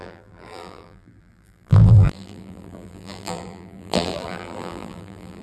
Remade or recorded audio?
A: remade